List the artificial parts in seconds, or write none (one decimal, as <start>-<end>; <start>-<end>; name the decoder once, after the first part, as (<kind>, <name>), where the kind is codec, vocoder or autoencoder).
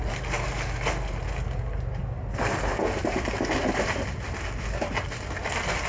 none